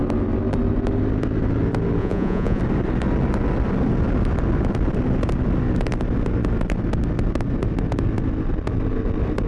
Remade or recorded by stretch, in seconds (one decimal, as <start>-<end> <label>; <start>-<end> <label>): 0.0-2.0 recorded; 2.0-2.6 remade; 2.6-9.5 recorded